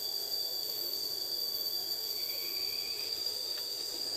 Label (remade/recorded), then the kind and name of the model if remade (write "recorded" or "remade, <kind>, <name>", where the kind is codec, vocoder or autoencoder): remade, autoencoder, DAC-VAE